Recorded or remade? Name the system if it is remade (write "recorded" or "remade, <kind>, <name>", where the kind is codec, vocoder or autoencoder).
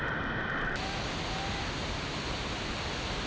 recorded